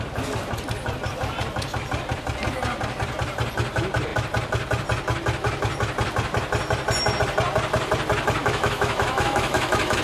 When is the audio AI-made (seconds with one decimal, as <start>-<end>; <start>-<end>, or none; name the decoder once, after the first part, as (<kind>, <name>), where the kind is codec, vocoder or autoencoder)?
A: 8.4-10.0 (autoencoder, DAC-VAE)